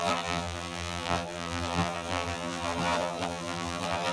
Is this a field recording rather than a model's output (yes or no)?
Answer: no